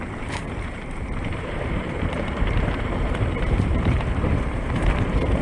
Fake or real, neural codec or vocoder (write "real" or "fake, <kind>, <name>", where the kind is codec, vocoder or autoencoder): fake, vocoder, BigVGAN v2